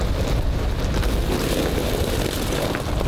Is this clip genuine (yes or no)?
yes